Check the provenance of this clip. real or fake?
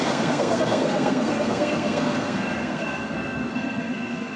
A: fake